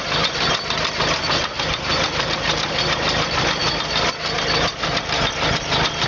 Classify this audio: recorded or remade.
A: recorded